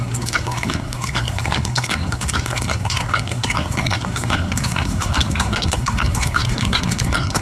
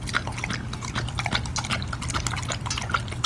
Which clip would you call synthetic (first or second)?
first